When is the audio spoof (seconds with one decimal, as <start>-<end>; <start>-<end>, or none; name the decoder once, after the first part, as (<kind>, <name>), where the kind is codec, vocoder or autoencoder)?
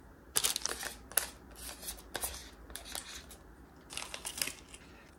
none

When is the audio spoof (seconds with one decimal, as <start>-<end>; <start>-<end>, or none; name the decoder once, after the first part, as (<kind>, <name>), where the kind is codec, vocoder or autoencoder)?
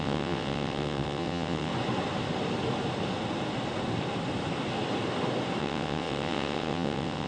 0.0-1.7 (vocoder, WaveNeXt); 5.6-7.3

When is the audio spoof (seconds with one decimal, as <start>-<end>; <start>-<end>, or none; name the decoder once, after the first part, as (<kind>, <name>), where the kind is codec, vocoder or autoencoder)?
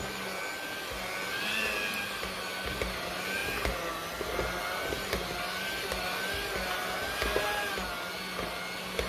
none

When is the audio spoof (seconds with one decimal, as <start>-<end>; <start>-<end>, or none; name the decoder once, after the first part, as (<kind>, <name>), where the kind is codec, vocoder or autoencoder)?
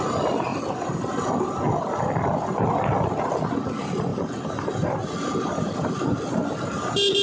none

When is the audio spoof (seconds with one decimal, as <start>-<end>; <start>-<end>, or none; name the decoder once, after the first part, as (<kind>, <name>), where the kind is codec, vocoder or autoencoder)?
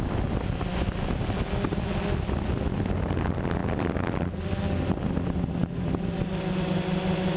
none